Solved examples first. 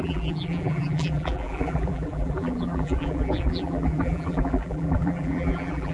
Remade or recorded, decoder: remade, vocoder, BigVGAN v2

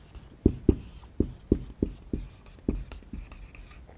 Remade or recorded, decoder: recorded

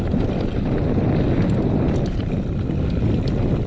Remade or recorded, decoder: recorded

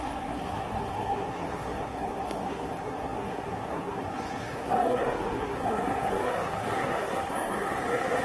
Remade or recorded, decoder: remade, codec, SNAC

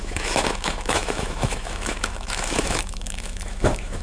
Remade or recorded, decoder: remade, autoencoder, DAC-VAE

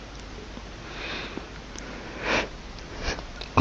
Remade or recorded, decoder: recorded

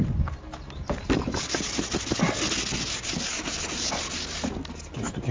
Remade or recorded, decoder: recorded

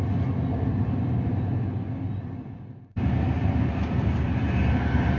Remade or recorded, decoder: recorded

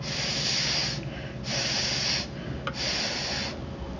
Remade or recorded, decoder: recorded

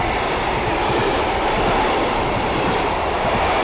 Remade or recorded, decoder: recorded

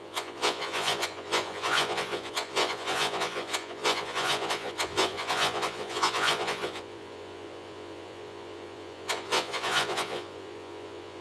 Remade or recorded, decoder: remade, vocoder, Vocos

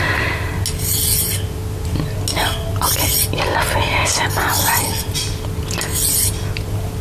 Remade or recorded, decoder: recorded